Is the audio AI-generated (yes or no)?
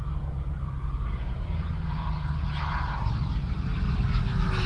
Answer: no